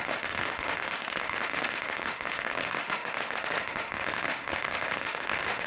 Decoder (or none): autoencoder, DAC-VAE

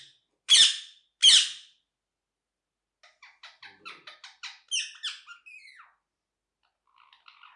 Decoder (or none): none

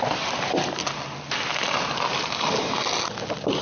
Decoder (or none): none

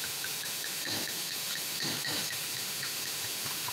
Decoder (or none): autoencoder, DAC-VAE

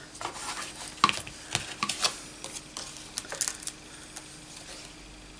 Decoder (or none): none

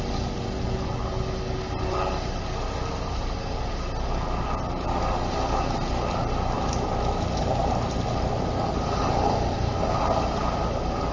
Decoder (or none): none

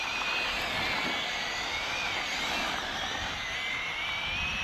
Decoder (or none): none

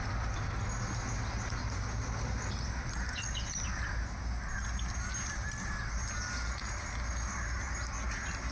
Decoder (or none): none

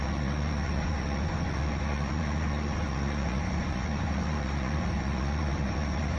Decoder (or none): vocoder, Vocos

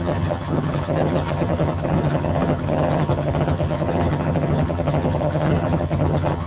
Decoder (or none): vocoder, HiFi-GAN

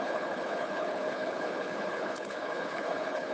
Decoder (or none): codec, HILCodec